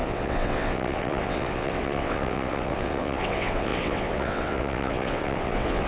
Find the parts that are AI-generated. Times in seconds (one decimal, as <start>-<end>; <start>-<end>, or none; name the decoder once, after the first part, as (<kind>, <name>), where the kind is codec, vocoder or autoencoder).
0.0-5.9 (vocoder, WaveNeXt)